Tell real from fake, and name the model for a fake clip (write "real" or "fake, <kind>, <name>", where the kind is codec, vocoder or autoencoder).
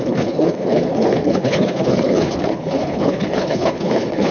fake, codec, HILCodec